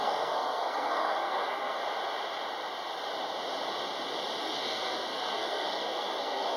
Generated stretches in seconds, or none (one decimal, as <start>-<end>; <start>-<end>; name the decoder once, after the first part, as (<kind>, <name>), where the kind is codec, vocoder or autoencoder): 0.0-1.8 (codec, SNAC); 4.4-6.6